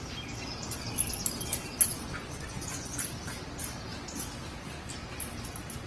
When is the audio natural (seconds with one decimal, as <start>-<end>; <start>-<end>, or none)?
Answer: 0.0-1.9; 3.0-5.9